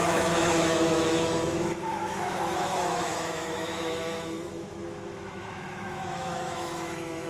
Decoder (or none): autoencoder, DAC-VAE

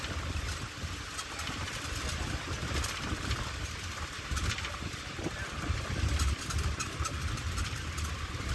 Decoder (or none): none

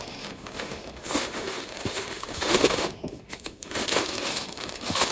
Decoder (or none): autoencoder, DAC-VAE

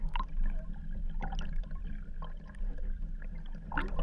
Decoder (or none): none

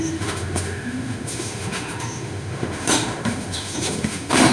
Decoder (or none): autoencoder, DAC-VAE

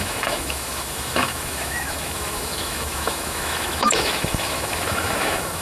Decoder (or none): autoencoder, DAC-VAE